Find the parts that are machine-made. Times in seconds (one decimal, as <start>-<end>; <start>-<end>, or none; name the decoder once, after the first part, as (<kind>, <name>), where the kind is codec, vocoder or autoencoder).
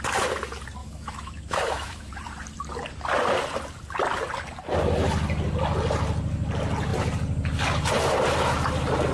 0.8-2.1 (autoencoder, DAC-VAE)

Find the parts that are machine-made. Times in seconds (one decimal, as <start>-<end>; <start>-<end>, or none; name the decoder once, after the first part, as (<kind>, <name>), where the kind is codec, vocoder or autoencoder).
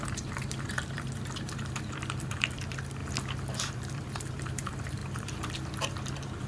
0.0-3.0 (vocoder, BigVGAN v2); 3.6-6.5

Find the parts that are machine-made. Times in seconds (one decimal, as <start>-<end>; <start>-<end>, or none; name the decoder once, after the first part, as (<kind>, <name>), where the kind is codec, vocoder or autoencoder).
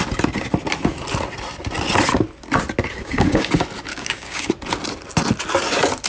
3.0-3.5 (codec, DAC); 3.9-4.5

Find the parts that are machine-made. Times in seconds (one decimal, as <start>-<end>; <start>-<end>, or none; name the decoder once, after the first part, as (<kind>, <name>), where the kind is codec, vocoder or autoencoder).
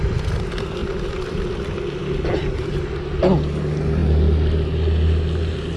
none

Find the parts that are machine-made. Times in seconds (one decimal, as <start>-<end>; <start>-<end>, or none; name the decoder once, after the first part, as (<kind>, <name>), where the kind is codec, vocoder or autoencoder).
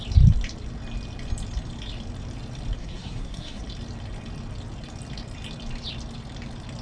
2.8-3.6 (codec, SNAC)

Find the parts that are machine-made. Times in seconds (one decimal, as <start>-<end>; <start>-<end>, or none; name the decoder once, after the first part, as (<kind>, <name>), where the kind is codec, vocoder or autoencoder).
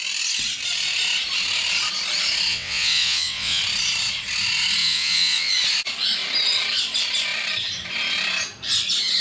2.5-3.6 (vocoder, WaveNeXt); 4.8-5.5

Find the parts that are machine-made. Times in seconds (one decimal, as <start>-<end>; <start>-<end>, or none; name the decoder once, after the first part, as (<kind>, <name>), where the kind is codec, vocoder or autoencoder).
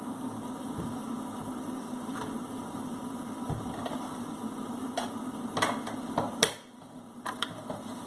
0.0-4.8 (vocoder, BigVGAN v2); 6.4-8.1